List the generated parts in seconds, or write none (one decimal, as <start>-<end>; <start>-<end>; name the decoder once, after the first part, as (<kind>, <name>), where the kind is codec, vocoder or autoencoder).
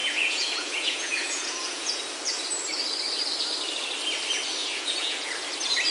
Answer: 0.0-2.0 (vocoder, Vocos); 4.6-5.3